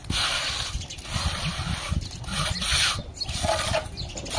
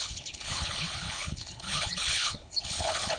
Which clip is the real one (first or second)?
first